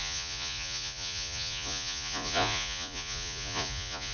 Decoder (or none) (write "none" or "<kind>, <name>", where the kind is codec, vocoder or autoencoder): vocoder, Vocos